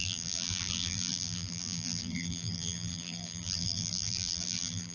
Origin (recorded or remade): remade